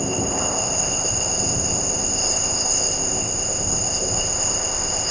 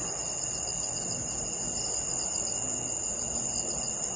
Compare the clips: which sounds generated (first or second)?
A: first